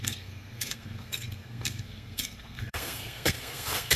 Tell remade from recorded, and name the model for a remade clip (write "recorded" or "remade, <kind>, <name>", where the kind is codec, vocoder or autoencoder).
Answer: remade, codec, SNAC